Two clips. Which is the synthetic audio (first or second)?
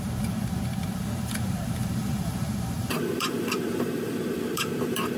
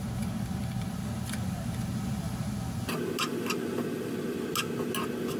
first